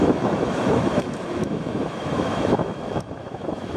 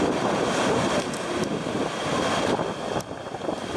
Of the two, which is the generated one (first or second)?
first